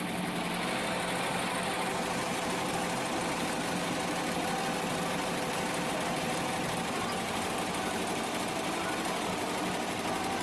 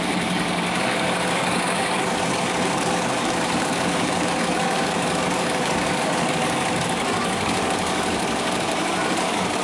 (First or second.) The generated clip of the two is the second